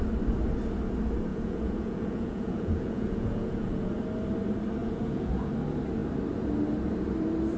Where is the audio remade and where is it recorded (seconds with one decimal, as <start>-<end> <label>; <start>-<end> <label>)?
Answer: 0.0-1.3 recorded; 1.3-4.0 remade; 4.0-4.8 recorded; 4.8-5.5 remade; 5.5-7.6 recorded